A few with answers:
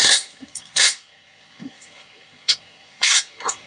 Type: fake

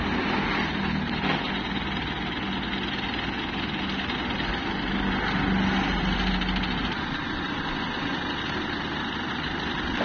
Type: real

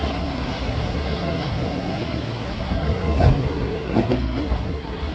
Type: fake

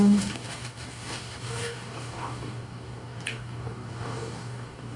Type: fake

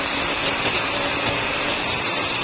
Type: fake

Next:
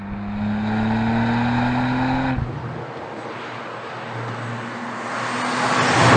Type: real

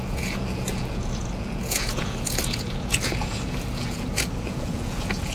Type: fake